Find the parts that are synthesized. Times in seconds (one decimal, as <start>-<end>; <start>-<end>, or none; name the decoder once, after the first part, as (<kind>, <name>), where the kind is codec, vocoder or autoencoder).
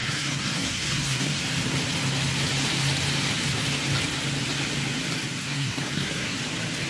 0.0-1.4 (codec, SNAC); 5.4-6.4